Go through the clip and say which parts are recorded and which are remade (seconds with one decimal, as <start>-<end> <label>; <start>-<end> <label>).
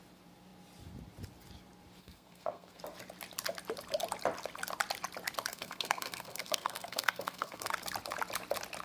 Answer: 0.0-2.0 recorded; 2.0-2.8 remade; 2.8-5.5 recorded; 5.5-7.7 remade; 7.7-8.8 recorded